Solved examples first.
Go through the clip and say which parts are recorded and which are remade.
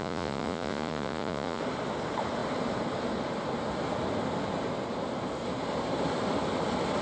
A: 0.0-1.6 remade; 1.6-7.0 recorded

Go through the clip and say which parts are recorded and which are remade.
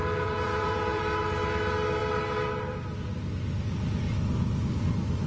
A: 0.0-1.0 remade; 1.0-5.3 recorded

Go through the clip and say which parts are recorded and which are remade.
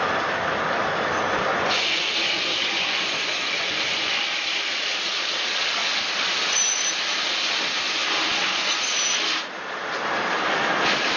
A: 0.0-1.5 recorded; 1.5-4.2 remade; 4.2-11.2 recorded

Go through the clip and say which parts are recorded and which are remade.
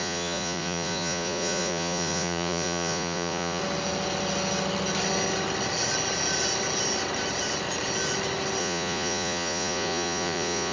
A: 0.0-3.6 remade; 3.6-8.6 recorded; 8.6-10.7 remade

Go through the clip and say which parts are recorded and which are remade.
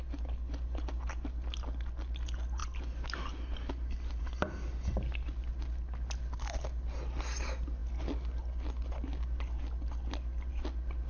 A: 0.0-11.1 recorded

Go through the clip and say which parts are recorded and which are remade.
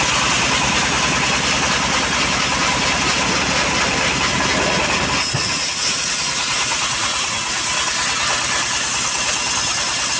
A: 0.0-5.4 recorded; 5.4-7.7 remade; 7.7-10.2 recorded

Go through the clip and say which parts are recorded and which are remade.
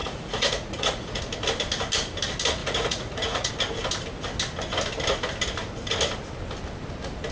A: 0.0-1.2 remade; 1.2-2.6 recorded; 2.6-3.5 remade; 3.5-7.3 recorded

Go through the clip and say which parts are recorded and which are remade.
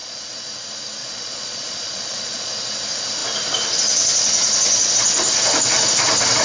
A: 0.0-0.5 remade; 0.5-1.0 recorded; 1.0-2.5 remade; 2.5-6.4 recorded